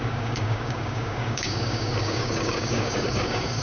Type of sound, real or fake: fake